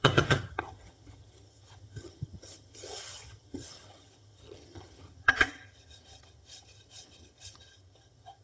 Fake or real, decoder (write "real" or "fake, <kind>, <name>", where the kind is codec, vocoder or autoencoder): fake, vocoder, HiFi-GAN